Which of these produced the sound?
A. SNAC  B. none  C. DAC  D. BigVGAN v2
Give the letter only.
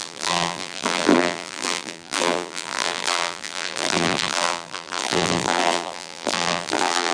D